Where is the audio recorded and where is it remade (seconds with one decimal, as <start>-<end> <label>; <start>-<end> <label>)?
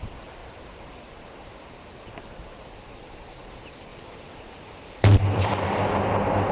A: 0.0-0.4 recorded; 0.4-3.5 remade; 3.5-3.9 recorded; 3.9-5.5 remade; 5.5-6.5 recorded